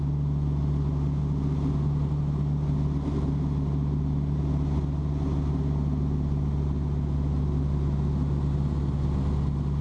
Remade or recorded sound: recorded